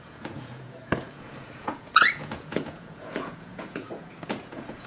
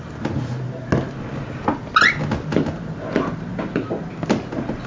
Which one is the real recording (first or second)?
second